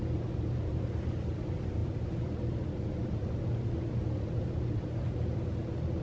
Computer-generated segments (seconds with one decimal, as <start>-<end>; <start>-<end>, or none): none